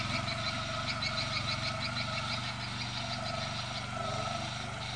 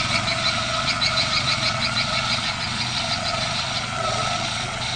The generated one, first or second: second